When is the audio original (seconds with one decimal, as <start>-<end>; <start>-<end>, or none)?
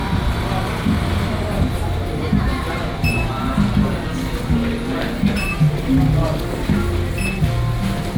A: 2.4-8.2